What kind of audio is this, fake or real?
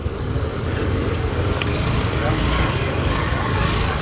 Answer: fake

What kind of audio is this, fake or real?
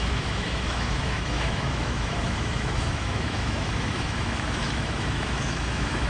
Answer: fake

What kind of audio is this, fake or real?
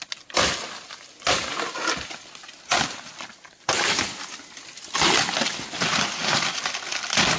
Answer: real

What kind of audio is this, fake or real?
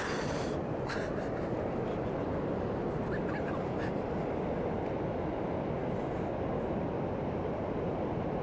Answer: real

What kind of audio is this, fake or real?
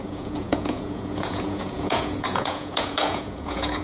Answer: fake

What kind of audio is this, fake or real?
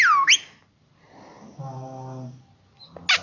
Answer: real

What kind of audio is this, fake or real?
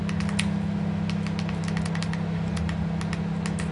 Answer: real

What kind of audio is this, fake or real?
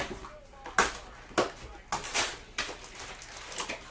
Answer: real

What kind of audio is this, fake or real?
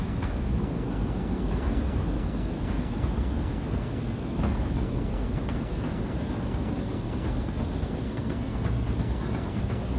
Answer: fake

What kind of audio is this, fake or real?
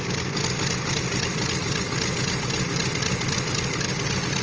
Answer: real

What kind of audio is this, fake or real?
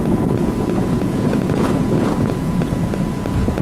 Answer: fake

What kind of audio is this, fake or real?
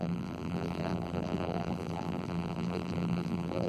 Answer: fake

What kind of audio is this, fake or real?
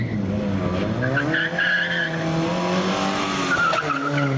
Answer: real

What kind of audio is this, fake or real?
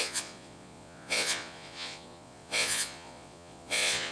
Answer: fake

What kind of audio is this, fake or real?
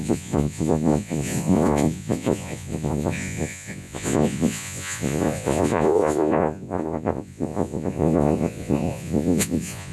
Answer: fake